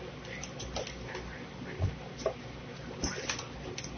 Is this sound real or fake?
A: real